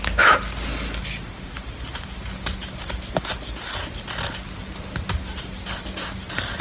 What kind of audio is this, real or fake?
real